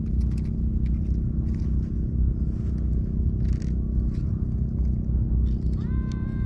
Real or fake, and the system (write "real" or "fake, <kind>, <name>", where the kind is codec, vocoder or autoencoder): real